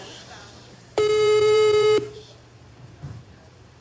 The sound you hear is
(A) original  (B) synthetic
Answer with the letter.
B